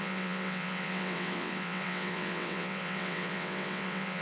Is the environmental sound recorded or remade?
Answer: remade